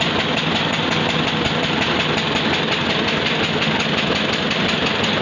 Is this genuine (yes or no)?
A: no